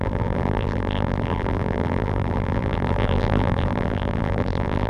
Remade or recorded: remade